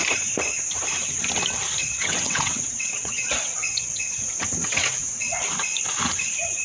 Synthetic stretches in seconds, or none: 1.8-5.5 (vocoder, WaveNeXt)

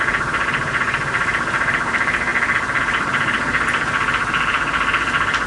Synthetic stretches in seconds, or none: 0.0-2.3 (vocoder, BigVGAN v2); 2.8-5.5

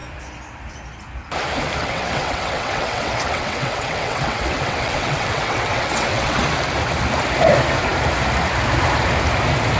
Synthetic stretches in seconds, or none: 1.8-6.4 (vocoder, WaveNeXt)